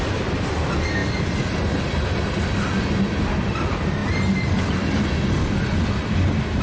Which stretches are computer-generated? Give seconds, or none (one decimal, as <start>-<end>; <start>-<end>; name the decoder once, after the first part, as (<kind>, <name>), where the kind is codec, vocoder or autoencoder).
none